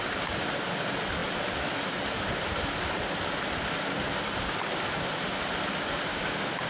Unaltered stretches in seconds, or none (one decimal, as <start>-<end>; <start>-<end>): 0.0-6.1